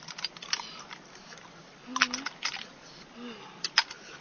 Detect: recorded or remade recorded